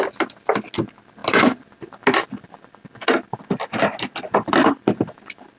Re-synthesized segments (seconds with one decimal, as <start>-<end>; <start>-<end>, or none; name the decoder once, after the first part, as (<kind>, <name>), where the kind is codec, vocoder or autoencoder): none